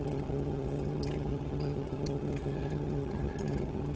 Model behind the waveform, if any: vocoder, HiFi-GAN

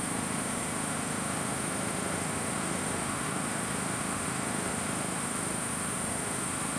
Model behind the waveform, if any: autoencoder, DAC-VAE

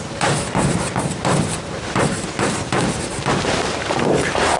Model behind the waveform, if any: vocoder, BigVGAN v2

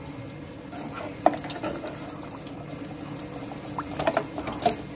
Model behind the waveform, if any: none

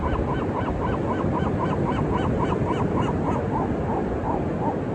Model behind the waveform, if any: none